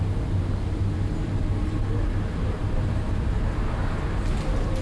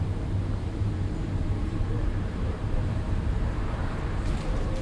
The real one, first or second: first